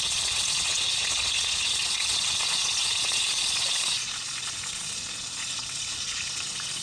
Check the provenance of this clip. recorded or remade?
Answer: remade